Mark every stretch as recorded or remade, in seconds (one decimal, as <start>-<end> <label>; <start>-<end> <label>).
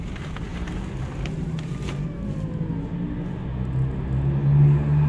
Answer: 0.0-0.5 recorded; 0.5-3.0 remade; 3.0-5.1 recorded